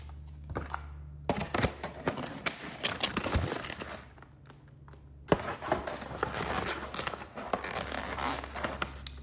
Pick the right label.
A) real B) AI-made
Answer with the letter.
A